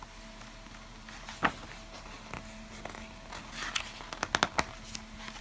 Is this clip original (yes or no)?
yes